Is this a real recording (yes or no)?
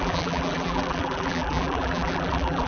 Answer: no